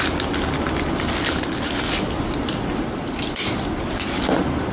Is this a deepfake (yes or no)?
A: no